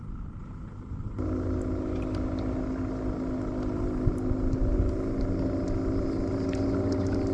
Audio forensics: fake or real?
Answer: real